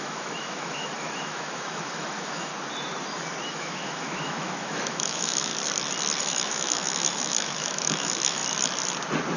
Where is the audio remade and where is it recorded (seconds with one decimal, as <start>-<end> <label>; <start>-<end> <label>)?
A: 0.0-2.5 remade; 2.5-3.5 recorded; 3.5-5.5 remade; 5.5-6.2 recorded; 6.2-8.4 remade; 8.4-9.4 recorded